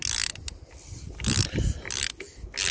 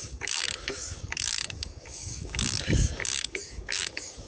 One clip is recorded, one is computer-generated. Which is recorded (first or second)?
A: first